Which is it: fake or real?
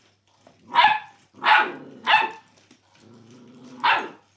fake